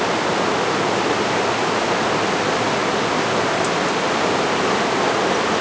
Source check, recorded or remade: recorded